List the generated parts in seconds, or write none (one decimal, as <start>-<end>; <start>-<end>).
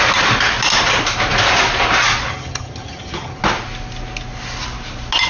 2.3-3.4